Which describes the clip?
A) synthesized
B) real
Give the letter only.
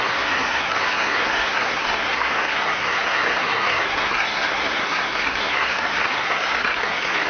A